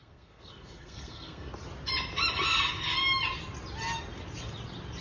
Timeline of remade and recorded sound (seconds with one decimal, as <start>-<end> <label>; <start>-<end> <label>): 0.0-1.5 remade; 1.5-5.0 recorded

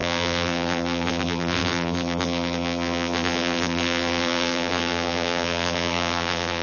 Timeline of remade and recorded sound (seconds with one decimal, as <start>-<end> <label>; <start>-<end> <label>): 0.0-6.6 remade

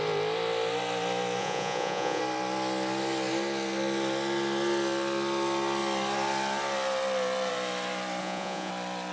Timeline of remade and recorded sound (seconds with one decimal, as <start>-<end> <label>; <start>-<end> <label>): 0.0-1.4 recorded; 1.4-2.2 remade; 2.2-8.2 recorded; 8.2-8.7 remade; 8.7-9.1 recorded

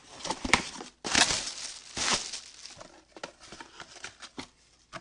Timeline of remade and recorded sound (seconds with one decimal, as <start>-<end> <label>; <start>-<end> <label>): 0.0-5.0 recorded

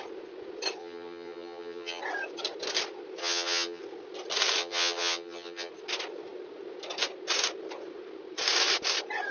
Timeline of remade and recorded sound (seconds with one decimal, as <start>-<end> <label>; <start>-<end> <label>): 0.0-0.8 recorded; 0.8-2.0 remade; 2.0-3.2 recorded; 3.2-3.8 remade; 3.8-4.6 recorded; 4.6-5.7 remade; 5.7-9.3 recorded